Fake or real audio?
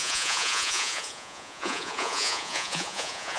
fake